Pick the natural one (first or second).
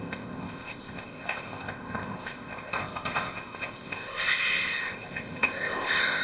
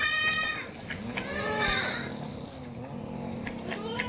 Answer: second